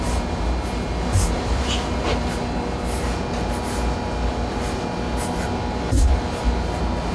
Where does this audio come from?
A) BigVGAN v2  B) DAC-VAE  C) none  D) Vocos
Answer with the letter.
C